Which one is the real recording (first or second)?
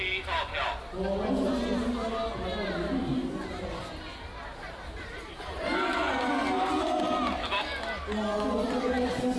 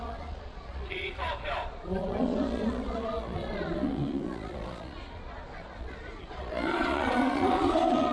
first